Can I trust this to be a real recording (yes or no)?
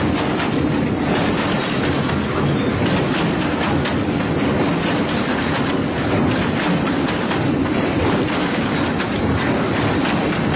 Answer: yes